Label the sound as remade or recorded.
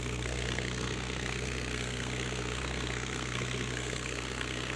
remade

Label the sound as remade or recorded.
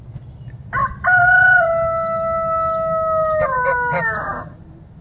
recorded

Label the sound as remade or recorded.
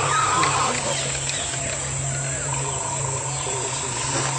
recorded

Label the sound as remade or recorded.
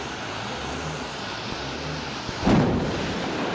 remade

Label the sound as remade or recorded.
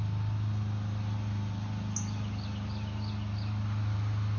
recorded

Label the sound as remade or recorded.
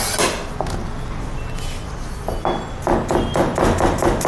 recorded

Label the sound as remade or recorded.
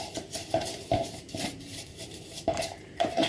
remade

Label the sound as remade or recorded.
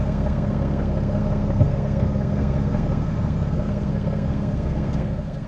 remade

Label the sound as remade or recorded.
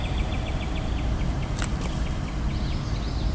recorded